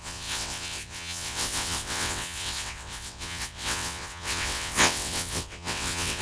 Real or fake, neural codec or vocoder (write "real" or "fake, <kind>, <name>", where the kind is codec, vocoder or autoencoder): fake, vocoder, WaveNeXt